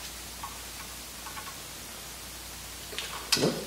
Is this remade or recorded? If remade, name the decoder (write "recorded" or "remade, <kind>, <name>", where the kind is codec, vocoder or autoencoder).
recorded